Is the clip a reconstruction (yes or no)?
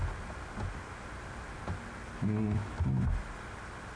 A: no